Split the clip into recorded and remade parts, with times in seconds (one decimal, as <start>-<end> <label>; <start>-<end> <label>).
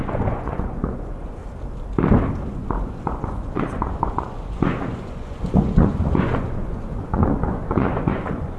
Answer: 0.0-1.4 remade; 1.4-2.4 recorded; 2.4-8.6 remade